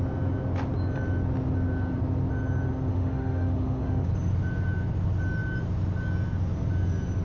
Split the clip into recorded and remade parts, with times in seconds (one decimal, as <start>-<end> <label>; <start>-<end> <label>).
0.0-2.9 recorded; 2.9-4.1 remade; 4.1-7.2 recorded